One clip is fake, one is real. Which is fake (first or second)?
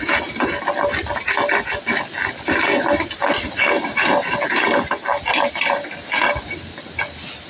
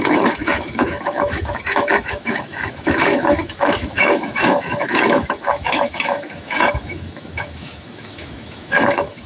second